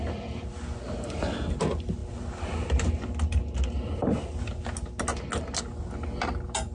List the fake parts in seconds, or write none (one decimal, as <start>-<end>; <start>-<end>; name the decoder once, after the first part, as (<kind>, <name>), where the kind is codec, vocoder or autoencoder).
none